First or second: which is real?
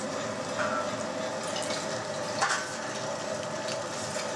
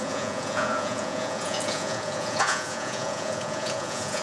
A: first